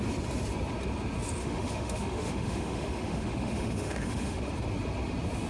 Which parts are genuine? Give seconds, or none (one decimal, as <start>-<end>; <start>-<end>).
0.0-1.4; 4.5-5.5